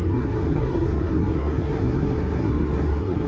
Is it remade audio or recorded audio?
remade